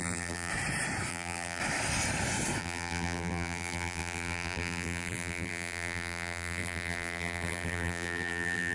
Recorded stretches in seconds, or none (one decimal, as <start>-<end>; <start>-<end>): 0.5-1.1; 1.6-2.6